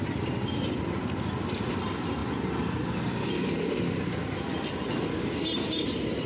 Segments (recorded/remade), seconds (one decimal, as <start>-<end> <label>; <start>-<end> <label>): 0.0-6.3 recorded